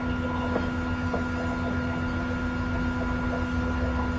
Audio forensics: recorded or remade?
recorded